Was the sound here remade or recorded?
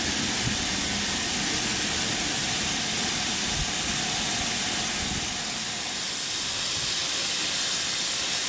recorded